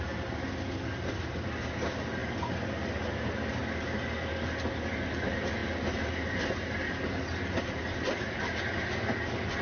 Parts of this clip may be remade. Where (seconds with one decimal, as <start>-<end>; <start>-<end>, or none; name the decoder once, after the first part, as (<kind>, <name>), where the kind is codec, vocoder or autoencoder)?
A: none